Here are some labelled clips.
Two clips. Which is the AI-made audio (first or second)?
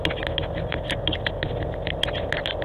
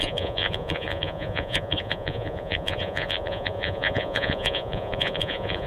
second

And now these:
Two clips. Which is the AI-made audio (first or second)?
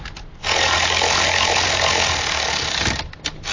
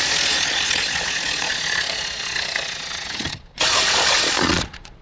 second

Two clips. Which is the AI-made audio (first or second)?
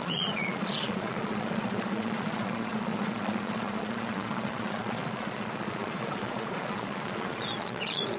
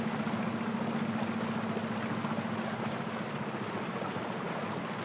first